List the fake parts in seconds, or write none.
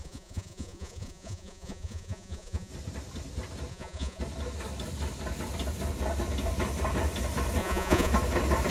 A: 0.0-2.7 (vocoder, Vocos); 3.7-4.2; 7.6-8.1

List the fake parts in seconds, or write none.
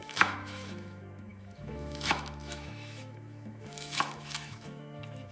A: 0.0-5.3 (autoencoder, DAC-VAE)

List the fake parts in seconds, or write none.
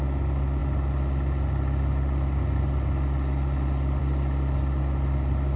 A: none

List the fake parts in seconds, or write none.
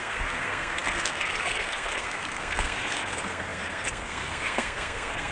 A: 0.0-5.3 (codec, SNAC)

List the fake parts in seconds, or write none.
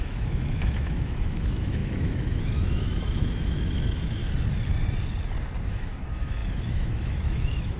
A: 0.0-4.2 (autoencoder, DAC-VAE); 5.7-7.8